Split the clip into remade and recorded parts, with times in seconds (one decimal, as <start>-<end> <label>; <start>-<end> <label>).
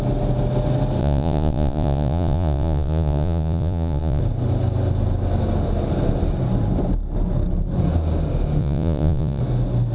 0.0-1.0 recorded; 1.0-4.2 remade; 4.2-8.6 recorded; 8.6-9.4 remade; 9.4-9.9 recorded